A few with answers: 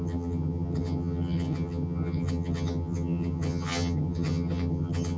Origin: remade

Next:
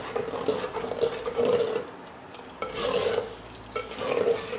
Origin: recorded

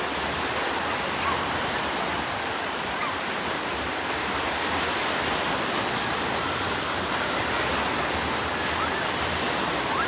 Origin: recorded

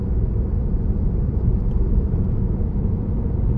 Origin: remade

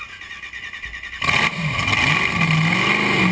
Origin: recorded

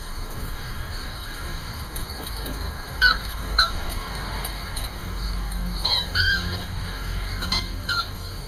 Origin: remade